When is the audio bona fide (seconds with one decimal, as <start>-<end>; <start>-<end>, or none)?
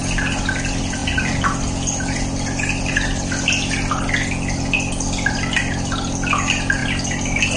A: 0.0-7.6